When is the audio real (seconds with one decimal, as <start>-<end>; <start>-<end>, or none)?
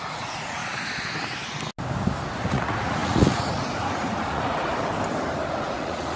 0.6-2.5; 4.7-5.5